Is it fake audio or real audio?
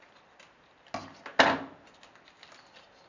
real